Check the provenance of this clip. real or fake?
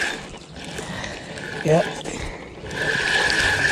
real